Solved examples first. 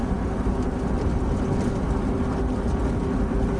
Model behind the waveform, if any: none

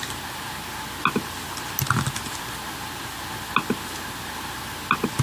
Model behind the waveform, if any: none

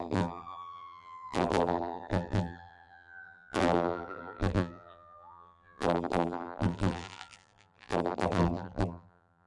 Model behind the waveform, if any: vocoder, BigVGAN v2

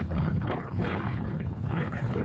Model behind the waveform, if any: codec, HILCodec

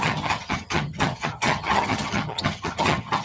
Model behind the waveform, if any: vocoder, HiFi-GAN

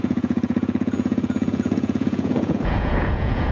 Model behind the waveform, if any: vocoder, Vocos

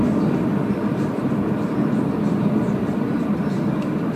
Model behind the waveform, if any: none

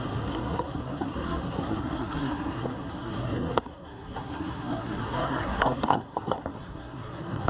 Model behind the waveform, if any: codec, SNAC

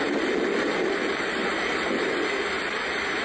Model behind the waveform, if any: none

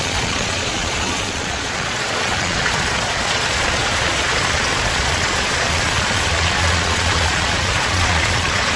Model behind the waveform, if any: vocoder, Vocos